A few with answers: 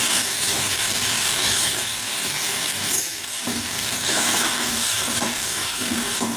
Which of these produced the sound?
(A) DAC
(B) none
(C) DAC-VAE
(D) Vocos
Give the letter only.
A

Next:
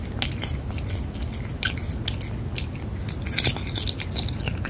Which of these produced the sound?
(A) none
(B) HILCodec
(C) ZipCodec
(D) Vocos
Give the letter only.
A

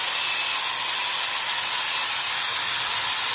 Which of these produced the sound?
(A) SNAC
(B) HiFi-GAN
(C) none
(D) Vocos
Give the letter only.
C